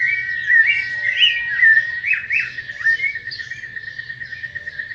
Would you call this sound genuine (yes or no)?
yes